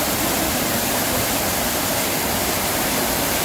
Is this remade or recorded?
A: remade